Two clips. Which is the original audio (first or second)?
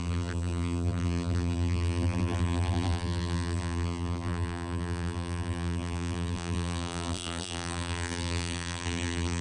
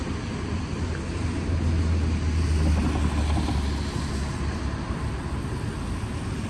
second